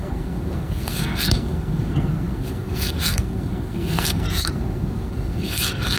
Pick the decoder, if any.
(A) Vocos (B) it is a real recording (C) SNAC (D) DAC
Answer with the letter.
C